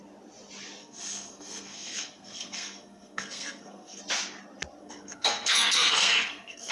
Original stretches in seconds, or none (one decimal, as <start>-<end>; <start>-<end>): 0.0-0.8; 4.0-4.8